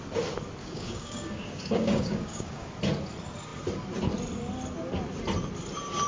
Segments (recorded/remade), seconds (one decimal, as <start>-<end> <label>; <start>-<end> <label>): 0.0-0.6 recorded; 0.6-2.7 remade; 2.7-6.1 recorded